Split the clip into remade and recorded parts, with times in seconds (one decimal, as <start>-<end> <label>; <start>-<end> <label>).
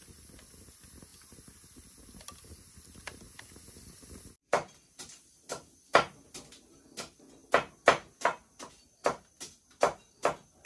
0.0-10.7 recorded